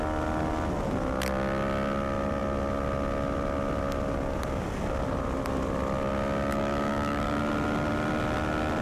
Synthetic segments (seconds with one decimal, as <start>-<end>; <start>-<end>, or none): 6.5-7.4